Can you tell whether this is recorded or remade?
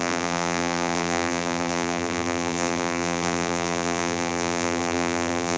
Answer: remade